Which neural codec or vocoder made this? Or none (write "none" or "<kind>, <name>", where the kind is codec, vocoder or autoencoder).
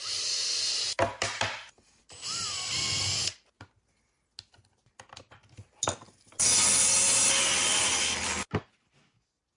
none